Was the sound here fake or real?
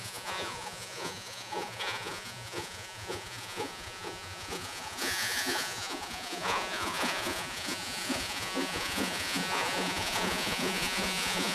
fake